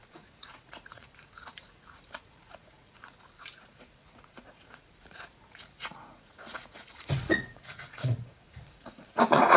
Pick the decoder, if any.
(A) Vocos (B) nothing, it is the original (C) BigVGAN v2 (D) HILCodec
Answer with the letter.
A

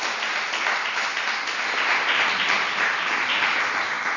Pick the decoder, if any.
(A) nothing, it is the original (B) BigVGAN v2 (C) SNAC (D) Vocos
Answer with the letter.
A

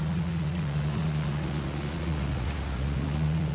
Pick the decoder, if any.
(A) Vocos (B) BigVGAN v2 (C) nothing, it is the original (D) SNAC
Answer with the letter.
A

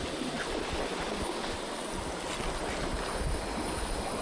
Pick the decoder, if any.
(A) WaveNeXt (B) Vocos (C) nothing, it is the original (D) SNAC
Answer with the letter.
C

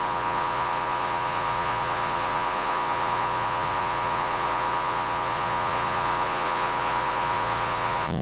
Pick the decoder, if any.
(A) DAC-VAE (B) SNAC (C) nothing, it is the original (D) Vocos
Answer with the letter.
D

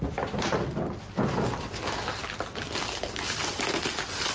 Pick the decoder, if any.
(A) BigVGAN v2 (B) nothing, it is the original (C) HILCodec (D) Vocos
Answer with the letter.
B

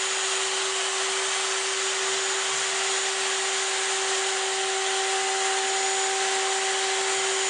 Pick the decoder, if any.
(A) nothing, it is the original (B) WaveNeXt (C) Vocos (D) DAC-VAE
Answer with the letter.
A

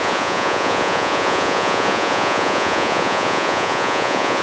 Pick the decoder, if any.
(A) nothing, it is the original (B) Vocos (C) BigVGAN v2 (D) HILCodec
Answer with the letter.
B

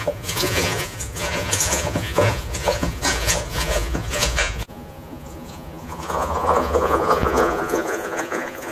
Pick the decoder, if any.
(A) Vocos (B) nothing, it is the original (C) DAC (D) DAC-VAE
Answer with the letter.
A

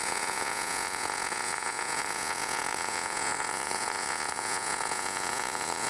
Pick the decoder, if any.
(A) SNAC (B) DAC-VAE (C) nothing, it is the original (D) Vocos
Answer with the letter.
D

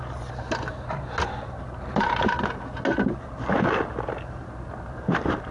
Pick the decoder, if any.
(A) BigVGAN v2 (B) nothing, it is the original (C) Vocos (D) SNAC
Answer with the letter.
B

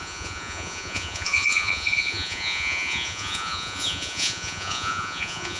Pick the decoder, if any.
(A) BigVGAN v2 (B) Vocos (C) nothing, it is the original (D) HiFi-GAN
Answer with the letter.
B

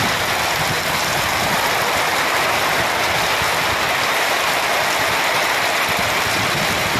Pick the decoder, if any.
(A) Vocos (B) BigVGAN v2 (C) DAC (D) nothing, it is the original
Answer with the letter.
D